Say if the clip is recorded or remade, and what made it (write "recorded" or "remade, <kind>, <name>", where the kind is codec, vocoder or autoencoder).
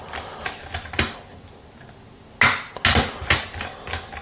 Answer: recorded